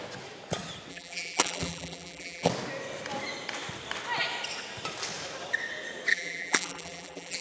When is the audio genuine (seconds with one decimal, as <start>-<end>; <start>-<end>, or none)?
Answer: 0.0-0.9; 2.5-6.1